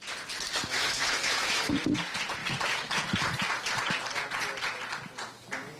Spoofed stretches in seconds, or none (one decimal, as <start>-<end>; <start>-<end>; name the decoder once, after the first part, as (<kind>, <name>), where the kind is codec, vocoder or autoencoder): 0.7-1.7 (autoencoder, DAC-VAE)